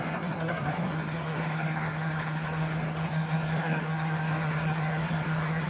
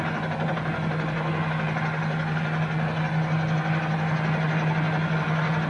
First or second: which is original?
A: second